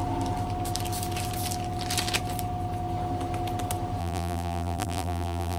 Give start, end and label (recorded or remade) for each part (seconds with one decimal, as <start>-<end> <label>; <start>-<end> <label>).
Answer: 0.0-4.0 recorded; 4.0-5.6 remade